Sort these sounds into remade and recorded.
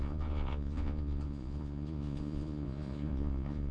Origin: remade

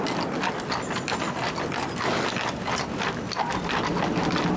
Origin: recorded